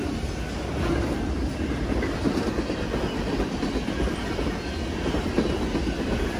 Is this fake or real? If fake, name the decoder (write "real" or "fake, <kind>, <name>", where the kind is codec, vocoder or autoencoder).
real